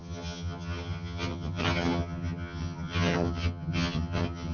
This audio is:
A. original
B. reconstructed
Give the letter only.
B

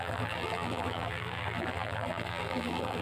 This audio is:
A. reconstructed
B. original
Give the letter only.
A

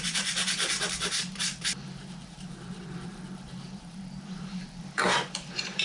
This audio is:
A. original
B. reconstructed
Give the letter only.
B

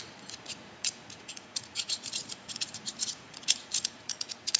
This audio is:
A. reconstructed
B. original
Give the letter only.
A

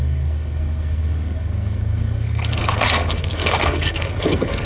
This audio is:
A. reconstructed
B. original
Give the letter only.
A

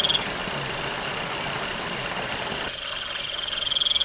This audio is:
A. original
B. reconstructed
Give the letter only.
A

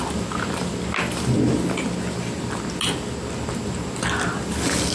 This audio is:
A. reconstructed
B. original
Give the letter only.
B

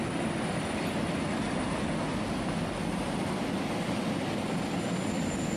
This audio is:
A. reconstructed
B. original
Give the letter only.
B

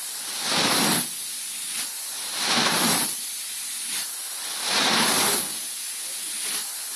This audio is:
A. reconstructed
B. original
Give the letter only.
B